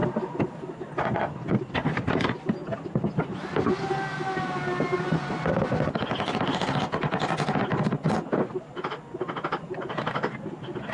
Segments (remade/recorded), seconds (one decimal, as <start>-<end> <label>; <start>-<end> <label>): 0.0-10.9 recorded